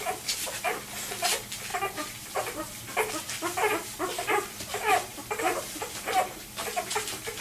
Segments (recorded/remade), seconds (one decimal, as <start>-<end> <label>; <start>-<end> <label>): 0.0-1.7 recorded; 1.7-3.1 remade; 3.1-4.1 recorded; 4.1-7.4 remade